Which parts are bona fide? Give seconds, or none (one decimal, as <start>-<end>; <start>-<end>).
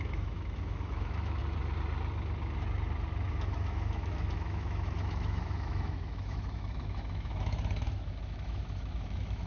1.4-3.3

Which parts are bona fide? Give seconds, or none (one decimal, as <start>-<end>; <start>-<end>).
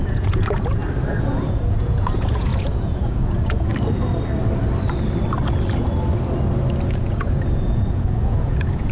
0.8-1.5; 3.7-6.9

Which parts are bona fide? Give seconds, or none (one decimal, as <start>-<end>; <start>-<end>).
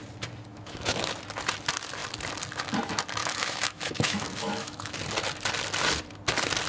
0.0-0.5; 1.0-3.2; 5.0-6.7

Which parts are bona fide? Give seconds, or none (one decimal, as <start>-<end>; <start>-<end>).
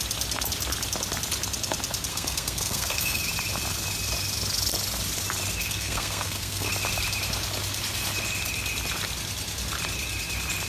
0.0-2.1; 3.2-5.6; 6.7-10.7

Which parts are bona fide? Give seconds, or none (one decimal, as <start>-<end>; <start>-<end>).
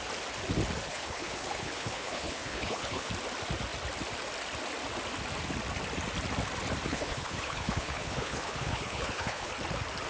0.0-0.9; 3.1-6.9; 9.5-10.1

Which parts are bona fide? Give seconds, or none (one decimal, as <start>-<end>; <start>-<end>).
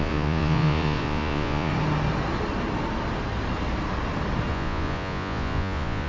1.7-4.5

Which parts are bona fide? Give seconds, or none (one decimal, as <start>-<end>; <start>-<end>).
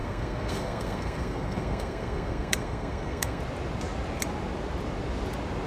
3.4-5.7